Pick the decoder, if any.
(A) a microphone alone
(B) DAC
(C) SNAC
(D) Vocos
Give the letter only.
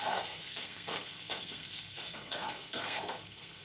C